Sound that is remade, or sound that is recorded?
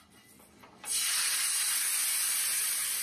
remade